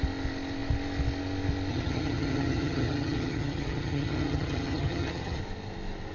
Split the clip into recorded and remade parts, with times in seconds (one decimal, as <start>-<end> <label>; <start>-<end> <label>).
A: 0.0-1.7 recorded; 1.7-5.4 remade; 5.4-6.1 recorded